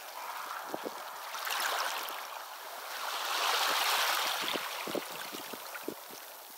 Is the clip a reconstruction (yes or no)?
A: no